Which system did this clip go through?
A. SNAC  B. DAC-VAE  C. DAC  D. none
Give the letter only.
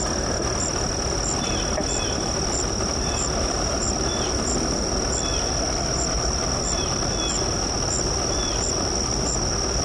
D